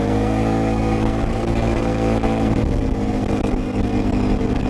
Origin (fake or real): fake